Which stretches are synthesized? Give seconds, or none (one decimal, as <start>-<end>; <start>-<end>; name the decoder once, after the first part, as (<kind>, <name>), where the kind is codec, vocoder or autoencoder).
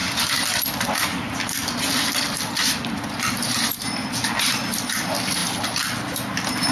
none